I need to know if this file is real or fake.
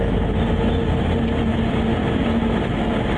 real